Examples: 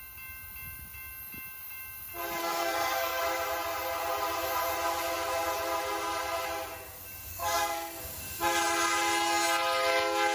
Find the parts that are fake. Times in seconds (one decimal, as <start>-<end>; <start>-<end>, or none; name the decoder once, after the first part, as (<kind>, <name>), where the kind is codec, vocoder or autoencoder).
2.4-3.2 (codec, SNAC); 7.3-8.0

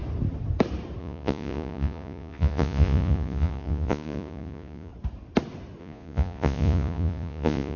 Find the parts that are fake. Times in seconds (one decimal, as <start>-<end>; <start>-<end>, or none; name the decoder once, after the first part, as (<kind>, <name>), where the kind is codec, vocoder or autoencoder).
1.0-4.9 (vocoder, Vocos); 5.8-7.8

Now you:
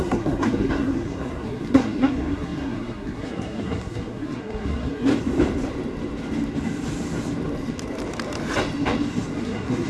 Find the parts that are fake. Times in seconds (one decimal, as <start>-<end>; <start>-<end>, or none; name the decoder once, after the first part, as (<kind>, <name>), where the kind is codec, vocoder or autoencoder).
0.0-5.1 (codec, SNAC); 9.4-9.9

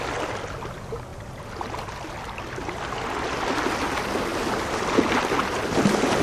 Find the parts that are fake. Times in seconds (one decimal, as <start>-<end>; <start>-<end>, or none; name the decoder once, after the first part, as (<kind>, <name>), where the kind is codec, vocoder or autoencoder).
none

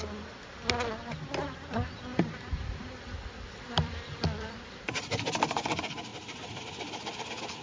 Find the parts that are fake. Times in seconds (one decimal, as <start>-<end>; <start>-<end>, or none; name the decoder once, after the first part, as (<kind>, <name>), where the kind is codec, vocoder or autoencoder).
2.1-4.7 (vocoder, BigVGAN v2); 6.1-6.6